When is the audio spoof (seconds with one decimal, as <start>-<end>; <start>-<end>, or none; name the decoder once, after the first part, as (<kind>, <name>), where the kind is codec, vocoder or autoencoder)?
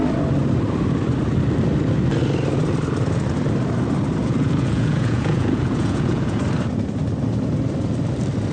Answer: 4.2-6.4 (vocoder, Vocos)